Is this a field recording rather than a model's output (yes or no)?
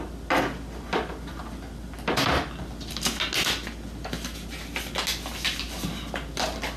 yes